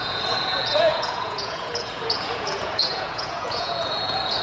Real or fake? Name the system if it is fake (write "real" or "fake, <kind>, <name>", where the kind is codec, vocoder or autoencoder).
fake, vocoder, Vocos